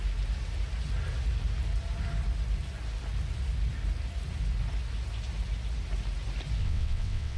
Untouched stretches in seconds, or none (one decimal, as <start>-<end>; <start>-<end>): 0.0-6.6